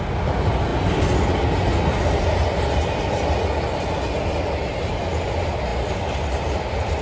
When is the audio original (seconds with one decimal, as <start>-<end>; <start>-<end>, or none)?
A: 0.0-7.0

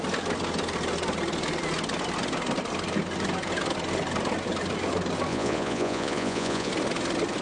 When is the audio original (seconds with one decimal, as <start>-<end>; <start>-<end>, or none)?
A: 0.0-5.3; 6.7-7.4

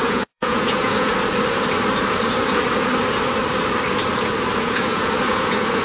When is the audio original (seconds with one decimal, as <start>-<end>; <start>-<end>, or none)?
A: 1.1-4.6

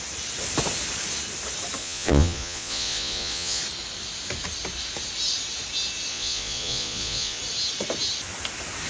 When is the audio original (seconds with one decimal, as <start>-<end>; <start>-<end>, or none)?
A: 0.0-1.8; 3.6-6.1; 7.4-8.9

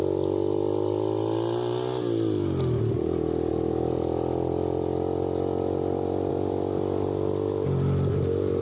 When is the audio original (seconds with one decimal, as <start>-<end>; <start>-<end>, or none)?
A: 0.0-8.6

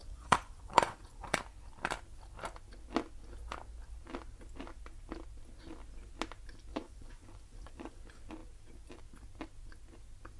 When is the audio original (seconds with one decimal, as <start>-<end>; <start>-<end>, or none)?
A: 1.4-6.7; 8.0-10.4

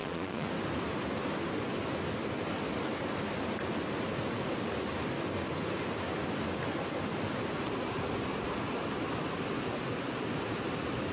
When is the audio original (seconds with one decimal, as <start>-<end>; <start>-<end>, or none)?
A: 0.5-11.1